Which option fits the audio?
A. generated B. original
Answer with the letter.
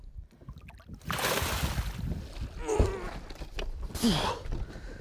B